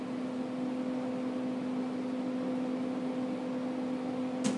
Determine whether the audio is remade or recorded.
recorded